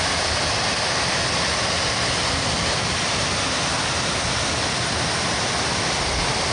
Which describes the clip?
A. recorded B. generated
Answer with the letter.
A